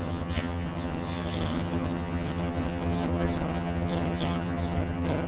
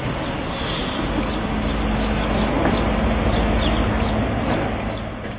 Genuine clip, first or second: second